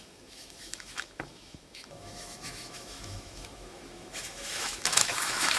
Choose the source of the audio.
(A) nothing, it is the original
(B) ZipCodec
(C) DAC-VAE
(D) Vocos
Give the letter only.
C